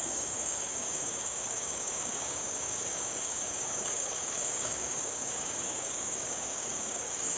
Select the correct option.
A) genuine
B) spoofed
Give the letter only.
B